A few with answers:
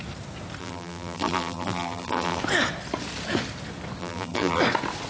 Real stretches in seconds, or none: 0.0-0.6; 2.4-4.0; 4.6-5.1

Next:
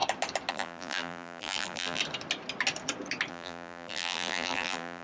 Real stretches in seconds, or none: 0.0-0.5; 2.0-3.3

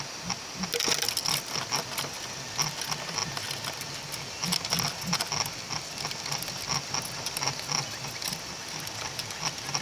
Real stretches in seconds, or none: 0.0-9.8